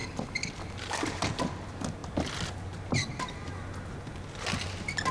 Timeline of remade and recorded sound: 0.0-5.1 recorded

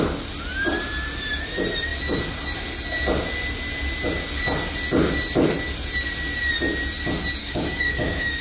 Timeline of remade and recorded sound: 0.0-7.4 recorded; 7.4-8.4 remade

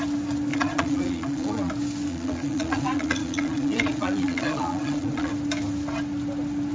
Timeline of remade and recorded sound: 0.0-0.5 recorded; 0.5-1.7 remade; 1.7-2.1 recorded; 2.1-5.3 remade; 5.3-6.7 recorded

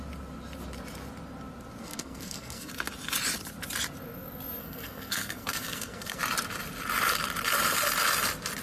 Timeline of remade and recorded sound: 0.0-1.8 recorded; 1.8-2.7 remade; 2.7-4.6 recorded; 4.6-6.2 remade; 6.2-8.6 recorded

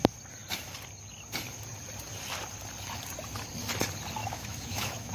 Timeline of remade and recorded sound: 0.0-4.2 recorded; 4.2-5.1 remade

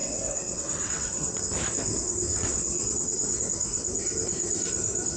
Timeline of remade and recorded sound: 0.0-1.4 remade; 1.4-2.3 recorded; 2.3-3.4 remade; 3.4-5.2 recorded